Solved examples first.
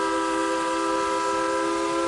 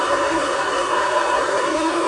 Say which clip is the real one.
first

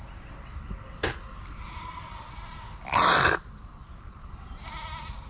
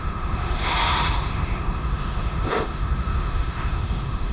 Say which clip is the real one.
first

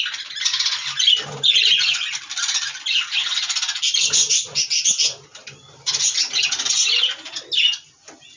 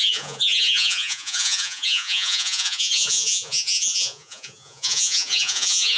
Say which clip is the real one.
first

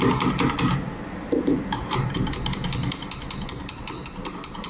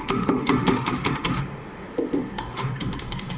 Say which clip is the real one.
first